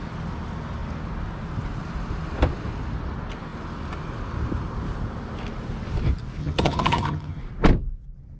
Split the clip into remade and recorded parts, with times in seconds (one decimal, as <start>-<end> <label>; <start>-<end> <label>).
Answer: 0.0-6.4 recorded; 6.4-7.4 remade; 7.4-8.4 recorded